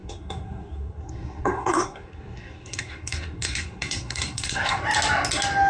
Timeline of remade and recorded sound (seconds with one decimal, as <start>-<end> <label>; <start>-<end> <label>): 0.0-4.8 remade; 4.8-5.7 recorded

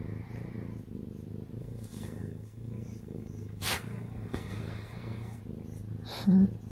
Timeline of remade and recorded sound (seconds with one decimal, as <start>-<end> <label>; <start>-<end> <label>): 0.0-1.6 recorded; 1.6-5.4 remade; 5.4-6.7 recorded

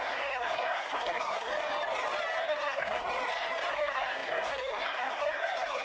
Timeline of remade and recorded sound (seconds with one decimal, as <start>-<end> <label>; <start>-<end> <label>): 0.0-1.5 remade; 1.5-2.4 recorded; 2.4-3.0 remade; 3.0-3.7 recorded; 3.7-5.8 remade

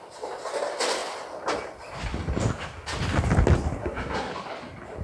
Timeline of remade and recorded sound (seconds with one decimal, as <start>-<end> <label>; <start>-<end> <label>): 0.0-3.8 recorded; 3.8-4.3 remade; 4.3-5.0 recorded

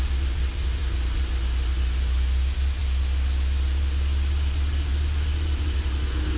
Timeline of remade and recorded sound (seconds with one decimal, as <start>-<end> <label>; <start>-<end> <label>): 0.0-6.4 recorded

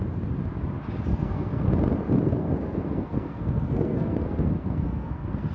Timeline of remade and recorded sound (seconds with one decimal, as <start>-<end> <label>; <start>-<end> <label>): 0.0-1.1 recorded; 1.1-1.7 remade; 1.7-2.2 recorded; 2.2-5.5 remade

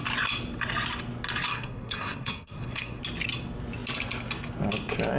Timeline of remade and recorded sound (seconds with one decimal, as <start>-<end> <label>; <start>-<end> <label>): 0.0-1.5 recorded; 1.5-3.0 remade; 3.0-5.2 recorded

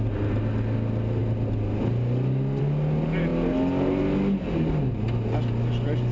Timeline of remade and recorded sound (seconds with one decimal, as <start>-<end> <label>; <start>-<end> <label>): 0.0-6.1 recorded